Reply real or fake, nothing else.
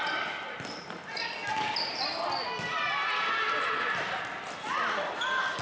real